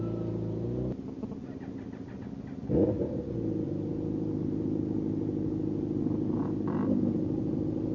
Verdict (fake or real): real